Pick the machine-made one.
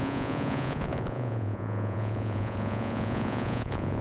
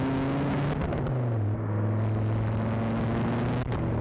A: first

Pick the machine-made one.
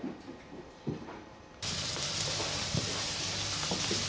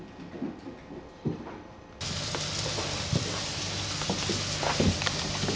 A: first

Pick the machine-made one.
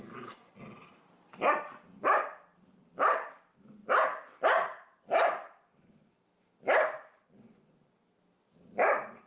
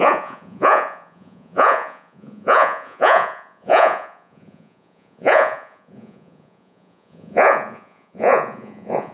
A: second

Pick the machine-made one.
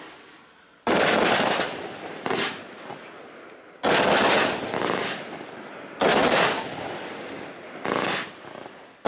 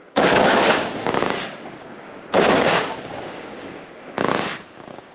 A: second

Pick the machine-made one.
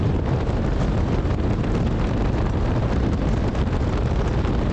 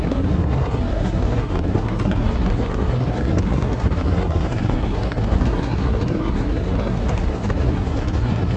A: second